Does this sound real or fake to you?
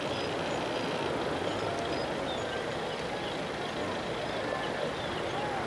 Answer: real